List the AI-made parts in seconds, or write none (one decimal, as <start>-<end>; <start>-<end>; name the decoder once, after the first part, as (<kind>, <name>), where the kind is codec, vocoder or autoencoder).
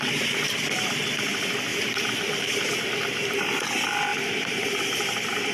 none